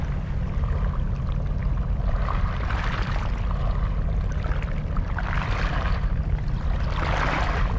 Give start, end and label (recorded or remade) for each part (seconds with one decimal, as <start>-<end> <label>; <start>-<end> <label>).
0.0-7.8 recorded